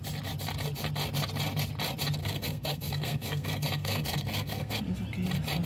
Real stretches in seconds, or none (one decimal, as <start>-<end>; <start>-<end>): 0.0-2.2; 4.8-5.7